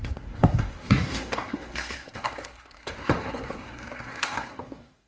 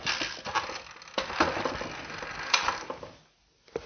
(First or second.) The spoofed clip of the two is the first